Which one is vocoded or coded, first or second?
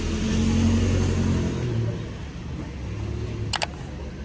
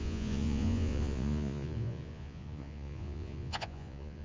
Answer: second